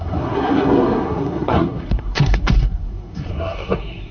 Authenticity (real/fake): fake